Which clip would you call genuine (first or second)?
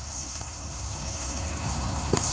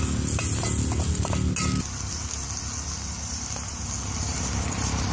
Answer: second